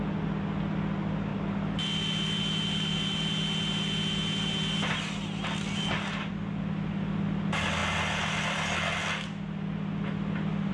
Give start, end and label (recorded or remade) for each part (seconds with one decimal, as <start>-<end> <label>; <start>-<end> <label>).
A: 0.0-10.7 recorded